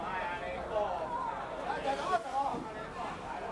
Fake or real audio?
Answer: real